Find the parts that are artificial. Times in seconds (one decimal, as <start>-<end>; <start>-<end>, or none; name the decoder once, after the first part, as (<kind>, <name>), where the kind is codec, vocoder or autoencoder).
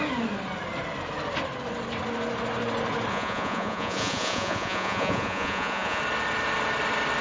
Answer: 3.1-6.0 (vocoder, Vocos)